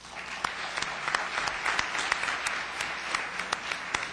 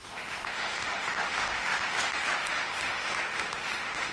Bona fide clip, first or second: first